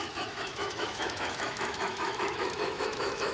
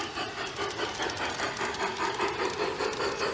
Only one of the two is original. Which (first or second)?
second